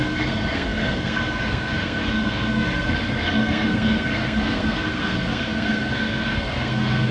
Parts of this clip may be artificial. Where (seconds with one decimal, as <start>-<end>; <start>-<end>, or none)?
0.0-7.1